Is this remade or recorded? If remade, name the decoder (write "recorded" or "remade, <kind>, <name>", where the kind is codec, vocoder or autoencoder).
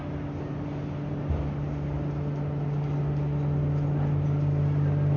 recorded